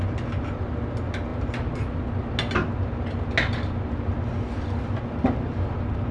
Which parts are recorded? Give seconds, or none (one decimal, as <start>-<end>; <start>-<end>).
0.0-6.1